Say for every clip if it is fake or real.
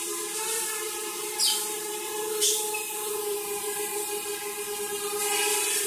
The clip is fake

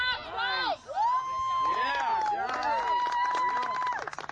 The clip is real